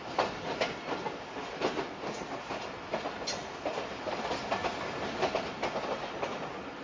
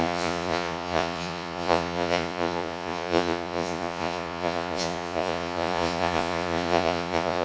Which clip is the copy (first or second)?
second